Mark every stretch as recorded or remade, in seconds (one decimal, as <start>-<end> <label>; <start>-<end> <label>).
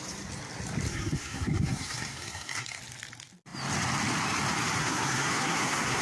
0.0-0.9 recorded; 0.9-2.8 remade; 2.8-4.8 recorded; 4.8-6.0 remade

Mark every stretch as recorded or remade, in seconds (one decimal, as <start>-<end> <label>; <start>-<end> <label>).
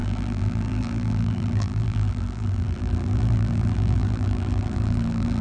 0.0-5.4 remade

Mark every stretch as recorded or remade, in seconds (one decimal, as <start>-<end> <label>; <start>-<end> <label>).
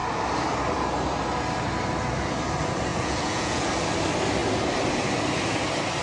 0.0-2.9 recorded; 2.9-3.7 remade; 3.7-6.0 recorded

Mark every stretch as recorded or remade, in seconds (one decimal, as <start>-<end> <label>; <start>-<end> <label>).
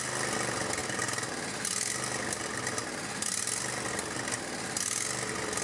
0.0-5.6 recorded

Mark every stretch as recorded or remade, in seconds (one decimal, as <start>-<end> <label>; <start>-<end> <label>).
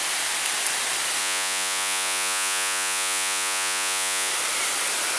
0.0-1.2 recorded; 1.2-4.3 remade; 4.3-5.2 recorded